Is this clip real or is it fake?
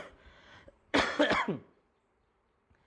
fake